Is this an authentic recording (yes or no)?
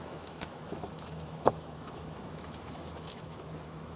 no